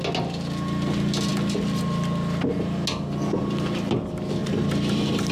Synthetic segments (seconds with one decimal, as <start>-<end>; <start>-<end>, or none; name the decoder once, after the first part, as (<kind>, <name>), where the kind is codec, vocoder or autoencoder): none